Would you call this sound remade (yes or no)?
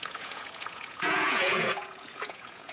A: yes